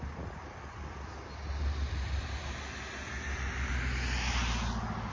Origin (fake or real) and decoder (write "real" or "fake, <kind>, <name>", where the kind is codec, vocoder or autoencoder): real